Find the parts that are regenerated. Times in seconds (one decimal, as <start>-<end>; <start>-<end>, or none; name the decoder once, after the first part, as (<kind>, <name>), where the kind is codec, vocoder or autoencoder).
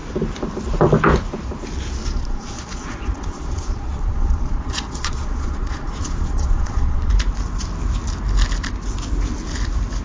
2.0-7.1 (vocoder, Vocos)